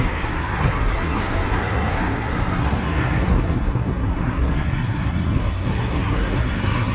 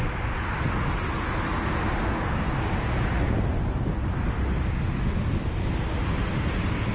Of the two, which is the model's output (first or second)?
first